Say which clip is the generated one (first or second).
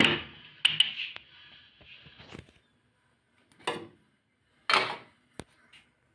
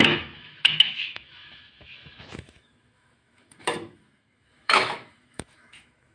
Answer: second